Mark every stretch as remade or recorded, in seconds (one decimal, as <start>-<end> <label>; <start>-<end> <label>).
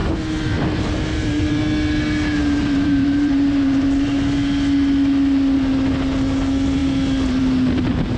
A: 0.0-1.6 remade; 1.6-2.4 recorded; 2.4-4.2 remade; 4.2-8.2 recorded